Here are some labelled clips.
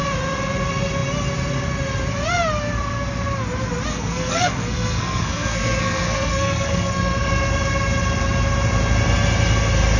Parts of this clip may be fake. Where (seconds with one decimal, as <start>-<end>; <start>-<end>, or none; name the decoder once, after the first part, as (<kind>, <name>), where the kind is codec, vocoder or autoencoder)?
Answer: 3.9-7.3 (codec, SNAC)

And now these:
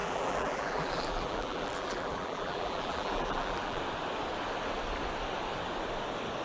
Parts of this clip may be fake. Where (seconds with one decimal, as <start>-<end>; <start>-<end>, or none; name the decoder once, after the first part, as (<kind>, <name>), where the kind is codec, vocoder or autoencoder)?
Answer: 0.0-3.8 (vocoder, BigVGAN v2)

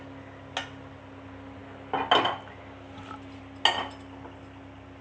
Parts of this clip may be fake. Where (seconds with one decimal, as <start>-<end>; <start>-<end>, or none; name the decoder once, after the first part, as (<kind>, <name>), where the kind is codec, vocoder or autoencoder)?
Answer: none

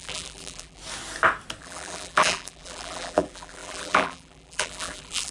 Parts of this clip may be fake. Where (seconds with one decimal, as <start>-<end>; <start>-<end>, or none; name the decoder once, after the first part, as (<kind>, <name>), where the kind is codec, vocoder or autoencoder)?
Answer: 0.0-0.8 (vocoder, BigVGAN v2); 1.6-5.3